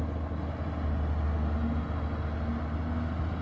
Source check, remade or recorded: recorded